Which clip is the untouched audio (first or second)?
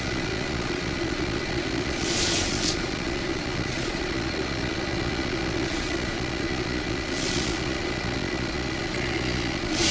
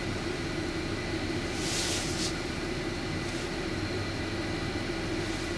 second